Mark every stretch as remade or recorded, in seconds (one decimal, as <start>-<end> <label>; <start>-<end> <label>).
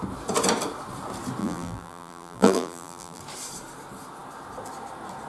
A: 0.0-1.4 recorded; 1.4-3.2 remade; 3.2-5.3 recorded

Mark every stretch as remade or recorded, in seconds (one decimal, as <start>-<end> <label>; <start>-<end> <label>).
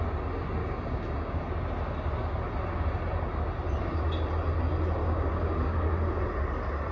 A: 0.0-0.6 recorded; 0.6-1.4 remade; 1.4-5.0 recorded; 5.0-6.2 remade; 6.2-6.9 recorded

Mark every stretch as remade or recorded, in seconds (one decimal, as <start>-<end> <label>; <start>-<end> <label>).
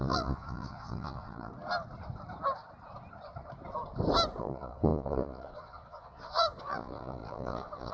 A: 0.0-1.5 remade; 1.5-4.4 recorded; 4.4-7.9 remade